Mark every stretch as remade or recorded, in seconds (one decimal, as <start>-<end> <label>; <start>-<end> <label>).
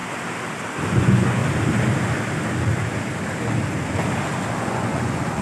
0.0-0.9 recorded; 0.9-1.4 remade; 1.4-4.6 recorded; 4.6-5.4 remade